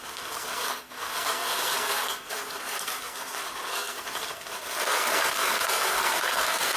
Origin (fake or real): fake